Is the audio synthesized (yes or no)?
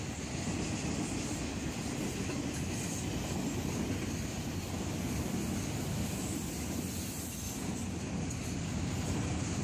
no